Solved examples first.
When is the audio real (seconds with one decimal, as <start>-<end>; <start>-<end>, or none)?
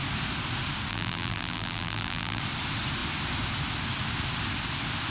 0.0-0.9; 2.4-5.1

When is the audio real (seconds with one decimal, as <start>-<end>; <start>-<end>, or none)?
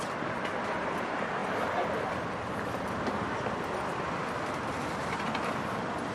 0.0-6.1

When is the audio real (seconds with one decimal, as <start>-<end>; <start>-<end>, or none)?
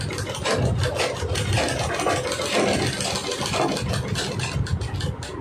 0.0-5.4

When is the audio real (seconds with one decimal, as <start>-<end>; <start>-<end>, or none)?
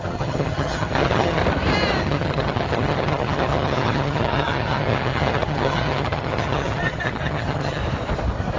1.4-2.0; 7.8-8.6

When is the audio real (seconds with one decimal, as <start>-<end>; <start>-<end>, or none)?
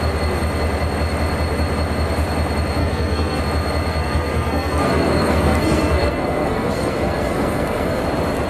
0.0-2.8; 3.4-3.9; 8.0-8.5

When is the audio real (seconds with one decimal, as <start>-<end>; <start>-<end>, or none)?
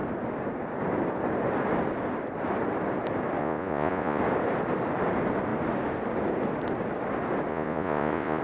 0.0-3.4; 4.2-7.5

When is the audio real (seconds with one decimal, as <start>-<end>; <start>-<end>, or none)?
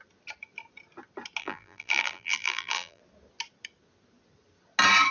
0.0-1.4; 3.0-5.1